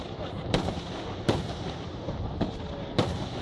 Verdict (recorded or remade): recorded